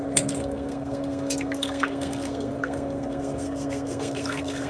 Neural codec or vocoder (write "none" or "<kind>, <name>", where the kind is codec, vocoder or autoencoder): codec, SNAC